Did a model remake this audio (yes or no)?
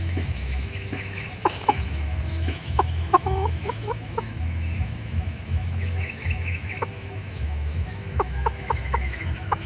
yes